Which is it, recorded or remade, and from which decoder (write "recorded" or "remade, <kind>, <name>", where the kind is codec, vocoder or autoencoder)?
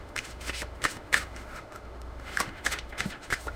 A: remade, autoencoder, DAC-VAE